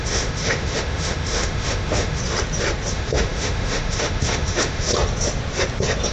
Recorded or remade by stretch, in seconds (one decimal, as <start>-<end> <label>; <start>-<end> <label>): 0.0-2.2 remade; 2.2-2.9 recorded; 2.9-4.9 remade; 4.9-6.1 recorded